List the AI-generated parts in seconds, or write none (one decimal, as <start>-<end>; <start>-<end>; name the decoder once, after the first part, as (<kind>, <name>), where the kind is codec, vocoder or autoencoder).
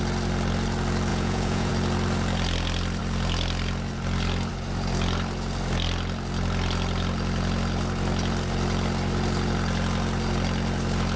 1.1-1.7 (vocoder, Vocos)